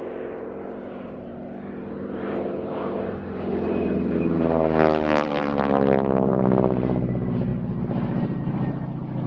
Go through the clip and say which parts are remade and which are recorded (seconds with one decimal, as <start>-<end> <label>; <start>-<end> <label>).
0.0-7.5 remade; 7.5-8.4 recorded; 8.4-9.3 remade